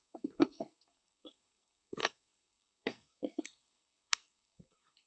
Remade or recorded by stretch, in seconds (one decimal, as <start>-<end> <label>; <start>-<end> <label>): 0.0-5.1 remade